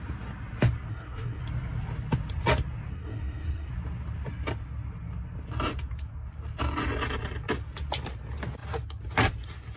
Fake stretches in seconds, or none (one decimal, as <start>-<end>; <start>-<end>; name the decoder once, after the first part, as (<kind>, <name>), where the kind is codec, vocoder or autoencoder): 0.9-1.4 (codec, SNAC); 2.9-3.7